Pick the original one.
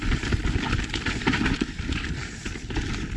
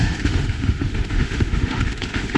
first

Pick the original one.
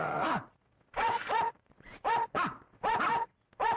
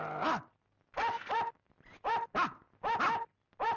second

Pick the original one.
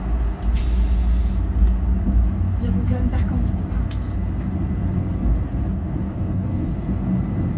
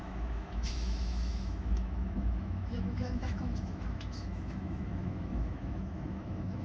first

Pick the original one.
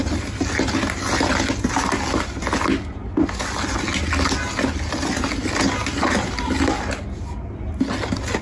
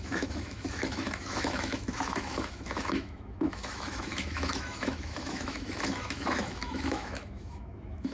first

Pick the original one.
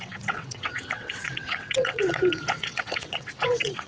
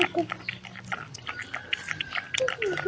second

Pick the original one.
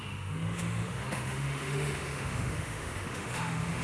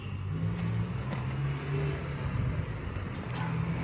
second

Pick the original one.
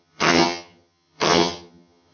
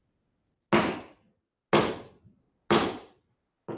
second